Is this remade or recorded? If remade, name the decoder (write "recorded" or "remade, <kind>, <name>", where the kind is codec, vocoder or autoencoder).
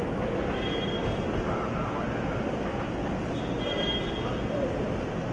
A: recorded